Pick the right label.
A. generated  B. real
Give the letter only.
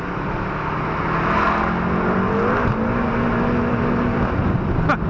B